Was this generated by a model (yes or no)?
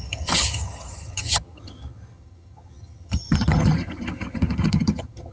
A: yes